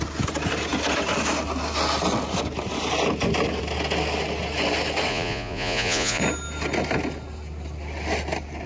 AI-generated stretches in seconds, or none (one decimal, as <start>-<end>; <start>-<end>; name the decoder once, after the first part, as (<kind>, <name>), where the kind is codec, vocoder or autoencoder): 5.1-6.2 (vocoder, Vocos)